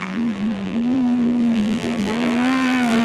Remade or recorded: remade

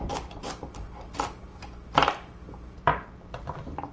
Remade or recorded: remade